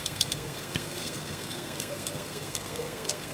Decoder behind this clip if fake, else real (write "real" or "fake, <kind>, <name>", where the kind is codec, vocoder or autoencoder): fake, codec, SNAC